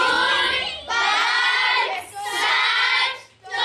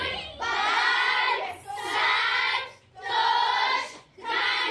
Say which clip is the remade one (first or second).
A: second